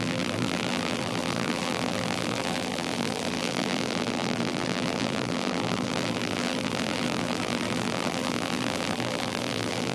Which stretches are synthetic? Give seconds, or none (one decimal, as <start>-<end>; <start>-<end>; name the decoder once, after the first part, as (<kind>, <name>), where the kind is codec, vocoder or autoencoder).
0.0-9.9 (vocoder, BigVGAN v2)